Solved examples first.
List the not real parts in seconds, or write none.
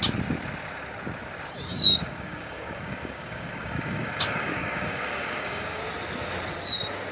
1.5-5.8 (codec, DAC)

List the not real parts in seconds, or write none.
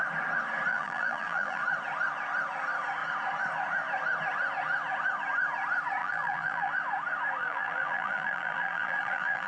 0.7-1.6 (vocoder, BigVGAN v2); 6.0-6.7; 7.4-9.5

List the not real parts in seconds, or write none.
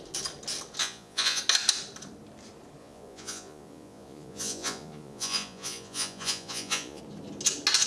0.8-1.4 (vocoder, Vocos); 2.8-7.0